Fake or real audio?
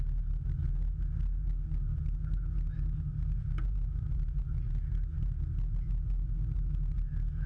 real